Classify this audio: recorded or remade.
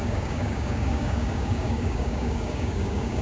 remade